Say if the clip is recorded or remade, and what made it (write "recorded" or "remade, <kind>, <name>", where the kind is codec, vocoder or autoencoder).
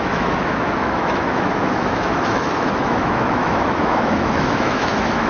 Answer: remade, autoencoder, DAC-VAE